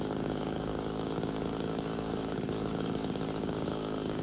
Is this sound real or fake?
fake